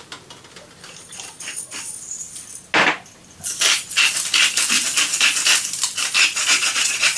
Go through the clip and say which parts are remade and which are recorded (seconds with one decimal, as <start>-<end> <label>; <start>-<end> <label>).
0.0-6.3 recorded; 6.3-7.2 remade